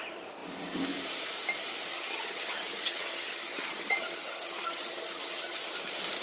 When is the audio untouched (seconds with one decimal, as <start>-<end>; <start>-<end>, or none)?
0.0-1.9; 5.6-6.2